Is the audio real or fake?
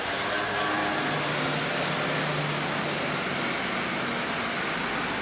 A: real